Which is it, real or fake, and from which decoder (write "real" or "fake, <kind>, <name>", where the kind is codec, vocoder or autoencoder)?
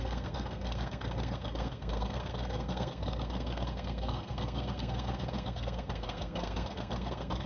fake, codec, SNAC